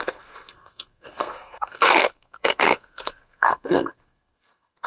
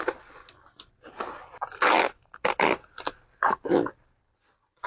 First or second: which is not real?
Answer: first